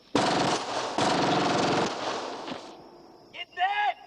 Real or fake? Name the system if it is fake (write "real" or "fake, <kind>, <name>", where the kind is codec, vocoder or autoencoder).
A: real